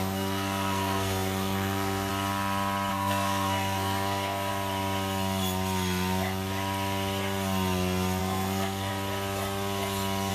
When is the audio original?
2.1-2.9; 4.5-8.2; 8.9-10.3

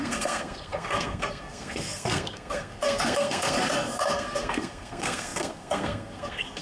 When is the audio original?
none

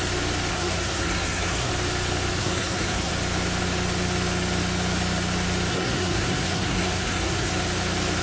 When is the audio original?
0.0-0.5; 1.7-2.4; 3.1-5.7; 7.5-8.2

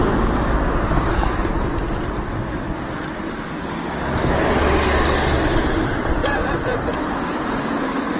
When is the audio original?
0.0-8.2

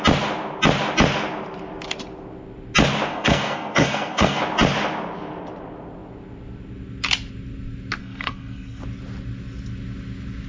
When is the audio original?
0.0-3.1; 4.4-8.0; 8.8-10.5

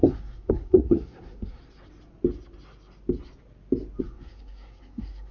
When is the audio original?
1.6-4.0